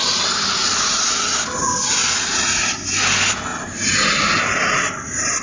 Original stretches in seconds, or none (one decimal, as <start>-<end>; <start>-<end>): 0.0-5.4

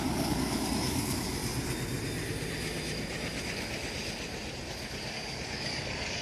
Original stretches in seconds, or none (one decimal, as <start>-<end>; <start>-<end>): 1.4-5.1